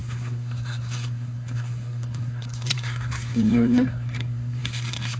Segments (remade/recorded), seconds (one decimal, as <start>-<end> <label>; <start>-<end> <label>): 0.0-5.2 remade